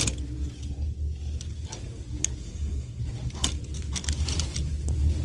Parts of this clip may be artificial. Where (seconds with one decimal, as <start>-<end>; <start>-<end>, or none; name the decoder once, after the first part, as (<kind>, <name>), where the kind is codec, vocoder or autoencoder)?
2.4-3.0 (codec, SNAC)